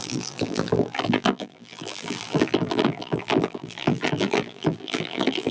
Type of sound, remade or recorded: remade